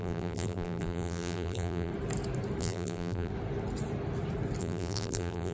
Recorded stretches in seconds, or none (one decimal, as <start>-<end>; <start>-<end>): 1.9-2.6; 3.3-4.6